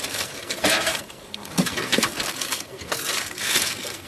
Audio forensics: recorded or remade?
remade